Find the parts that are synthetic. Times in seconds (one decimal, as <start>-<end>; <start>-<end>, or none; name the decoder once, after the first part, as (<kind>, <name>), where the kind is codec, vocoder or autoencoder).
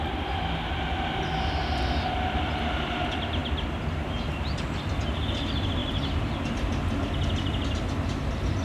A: 5.8-6.4 (vocoder, BigVGAN v2)